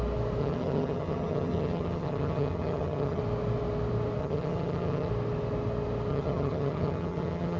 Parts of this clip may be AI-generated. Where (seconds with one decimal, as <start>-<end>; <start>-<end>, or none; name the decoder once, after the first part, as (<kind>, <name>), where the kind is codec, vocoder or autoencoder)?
0.4-3.2 (vocoder, HiFi-GAN); 4.2-5.1; 6.1-7.6